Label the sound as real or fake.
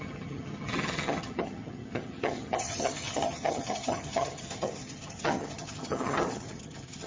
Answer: fake